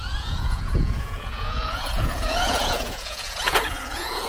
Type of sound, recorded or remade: remade